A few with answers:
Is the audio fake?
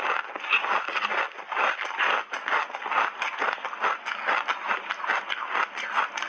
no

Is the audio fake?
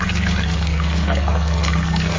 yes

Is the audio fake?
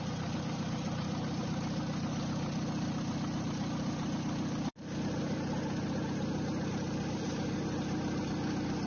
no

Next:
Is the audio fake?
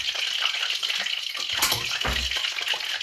no